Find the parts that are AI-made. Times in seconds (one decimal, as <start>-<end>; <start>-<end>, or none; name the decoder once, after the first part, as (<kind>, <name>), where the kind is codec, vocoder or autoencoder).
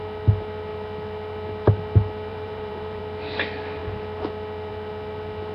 2.3-3.0 (vocoder, BigVGAN v2)